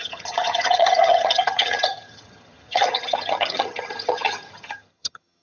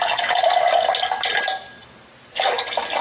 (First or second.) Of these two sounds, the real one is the second